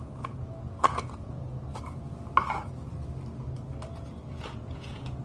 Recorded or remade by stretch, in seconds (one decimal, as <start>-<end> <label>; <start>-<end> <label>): 0.0-1.7 remade; 1.7-4.3 recorded; 4.3-5.2 remade

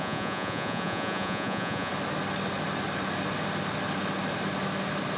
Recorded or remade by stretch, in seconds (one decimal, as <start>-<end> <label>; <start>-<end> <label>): 0.0-1.9 remade; 1.9-5.2 recorded

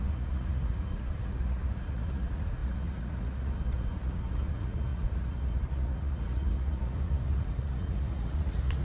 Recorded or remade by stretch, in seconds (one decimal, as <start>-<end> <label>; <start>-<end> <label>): 0.0-8.8 remade

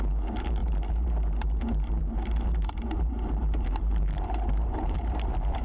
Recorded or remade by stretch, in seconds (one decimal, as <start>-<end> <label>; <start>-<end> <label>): 0.0-0.6 recorded; 0.6-1.6 remade; 1.6-2.0 recorded; 2.0-5.6 remade

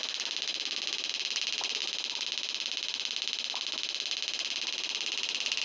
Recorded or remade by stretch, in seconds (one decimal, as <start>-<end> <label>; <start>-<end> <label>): 0.0-5.6 recorded

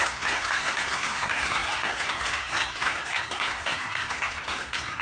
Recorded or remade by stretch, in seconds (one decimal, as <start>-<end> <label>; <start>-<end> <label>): 0.0-5.0 remade